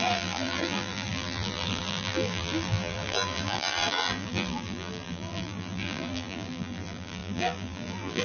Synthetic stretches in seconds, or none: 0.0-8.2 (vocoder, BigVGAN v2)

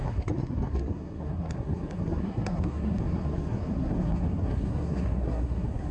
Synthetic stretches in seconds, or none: 0.0-5.9 (codec, SNAC)

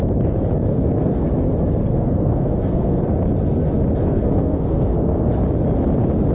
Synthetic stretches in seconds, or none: 0.7-1.3 (codec, SNAC); 1.8-3.0; 4.0-5.3

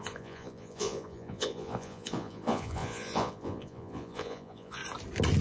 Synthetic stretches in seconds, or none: 0.0-4.8 (vocoder, Vocos)